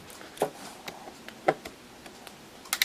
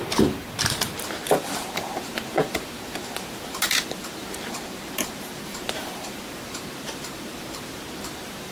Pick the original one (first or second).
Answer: first